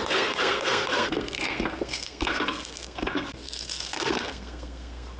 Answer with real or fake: fake